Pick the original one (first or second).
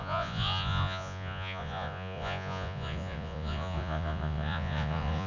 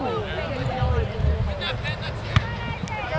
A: second